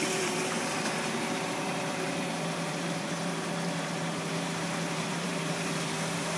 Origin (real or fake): fake